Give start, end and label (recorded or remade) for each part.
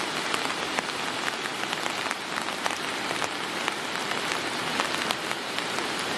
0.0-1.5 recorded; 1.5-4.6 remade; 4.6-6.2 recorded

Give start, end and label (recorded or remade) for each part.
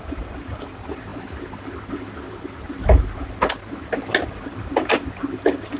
0.0-1.1 remade; 1.1-4.3 recorded; 4.3-5.8 remade